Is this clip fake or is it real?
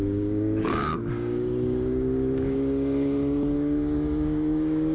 fake